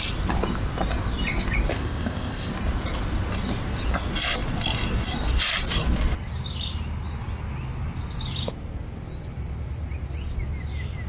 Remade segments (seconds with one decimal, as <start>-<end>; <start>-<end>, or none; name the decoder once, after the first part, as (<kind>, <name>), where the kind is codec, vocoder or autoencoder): 1.7-2.5 (codec, ZipCodec)